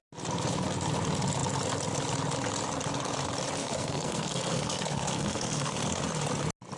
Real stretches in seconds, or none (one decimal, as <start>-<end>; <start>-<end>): 0.0-3.6; 6.0-6.8